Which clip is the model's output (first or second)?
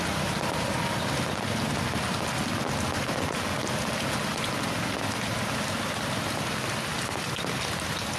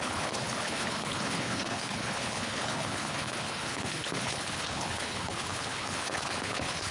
second